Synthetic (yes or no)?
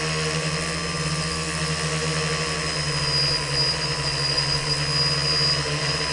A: no